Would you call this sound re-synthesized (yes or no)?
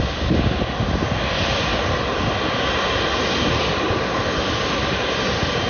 no